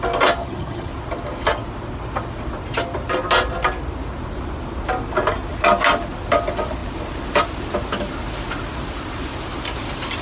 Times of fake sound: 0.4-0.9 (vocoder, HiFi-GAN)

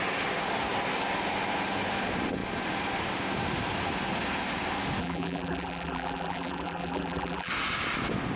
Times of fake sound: 5.0-7.5 (vocoder, BigVGAN v2)

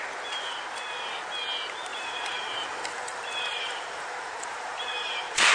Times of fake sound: 1.9-5.5 (vocoder, BigVGAN v2)

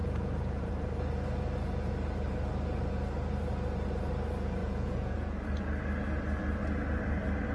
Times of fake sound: 0.0-0.7 (vocoder, Vocos); 4.6-5.4

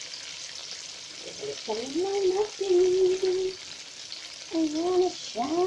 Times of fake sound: none

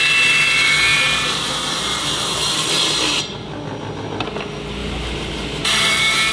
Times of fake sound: 0.9-3.2 (vocoder, BigVGAN v2); 4.8-6.3

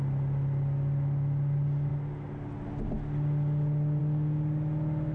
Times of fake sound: none